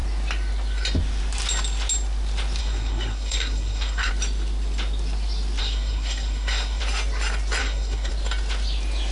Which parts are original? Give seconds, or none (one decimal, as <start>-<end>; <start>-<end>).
0.0-2.6; 4.1-5.6; 6.8-7.6; 8.1-9.1